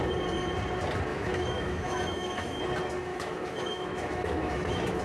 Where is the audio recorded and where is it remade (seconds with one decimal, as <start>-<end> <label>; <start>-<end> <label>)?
0.0-1.1 recorded; 1.1-2.6 remade; 2.6-3.1 recorded; 3.1-5.0 remade